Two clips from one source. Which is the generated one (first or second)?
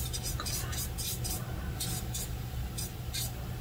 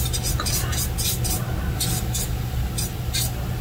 first